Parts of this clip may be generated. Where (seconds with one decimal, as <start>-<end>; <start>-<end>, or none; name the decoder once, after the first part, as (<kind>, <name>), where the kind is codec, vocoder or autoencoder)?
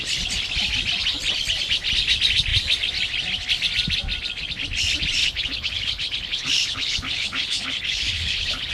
5.2-8.7 (codec, HILCodec)